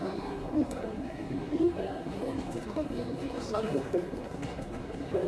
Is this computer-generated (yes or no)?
yes